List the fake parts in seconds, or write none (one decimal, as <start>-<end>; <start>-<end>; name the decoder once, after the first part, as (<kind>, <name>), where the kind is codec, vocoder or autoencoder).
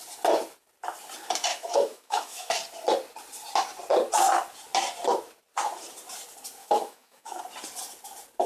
1.5-2.5 (autoencoder, DAC-VAE); 6.6-7.4